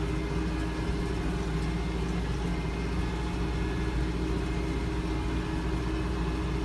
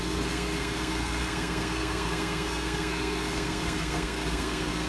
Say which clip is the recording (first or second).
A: first